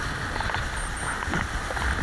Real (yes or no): yes